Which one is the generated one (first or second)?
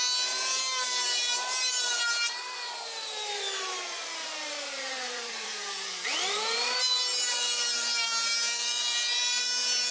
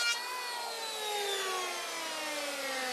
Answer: first